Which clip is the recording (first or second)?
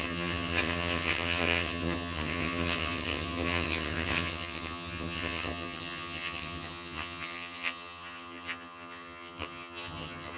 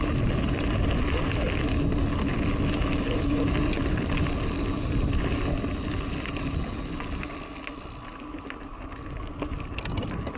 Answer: second